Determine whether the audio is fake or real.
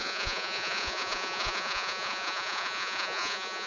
fake